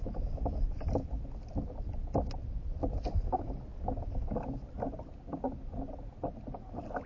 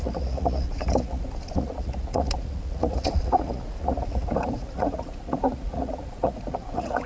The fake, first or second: second